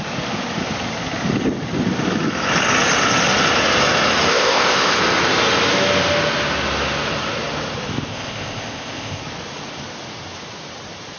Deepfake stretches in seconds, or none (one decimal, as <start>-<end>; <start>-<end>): 4.3-5.0; 8.1-9.2